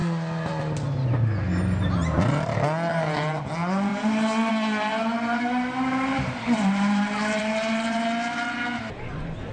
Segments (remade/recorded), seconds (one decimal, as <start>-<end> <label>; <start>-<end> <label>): 0.0-2.9 recorded; 2.9-3.5 remade; 3.5-3.9 recorded; 3.9-4.5 remade; 4.5-5.0 recorded; 5.0-9.5 remade